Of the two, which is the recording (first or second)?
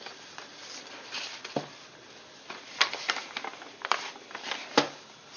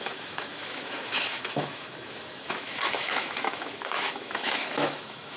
first